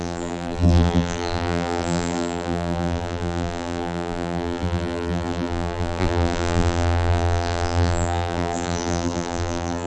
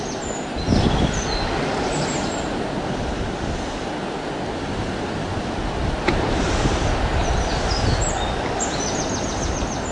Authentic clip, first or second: second